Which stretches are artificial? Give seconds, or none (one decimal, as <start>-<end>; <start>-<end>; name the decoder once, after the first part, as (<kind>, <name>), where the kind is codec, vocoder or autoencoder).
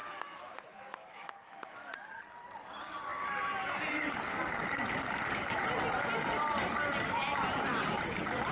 0.0-1.9 (autoencoder, DAC-VAE)